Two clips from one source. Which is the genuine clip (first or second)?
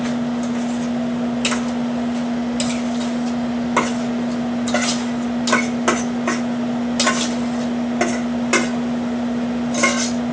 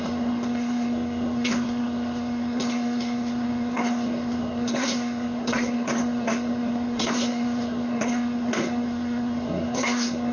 first